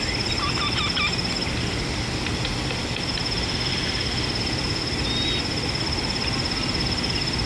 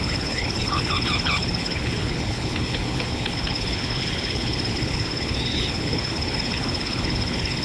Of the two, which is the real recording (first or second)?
first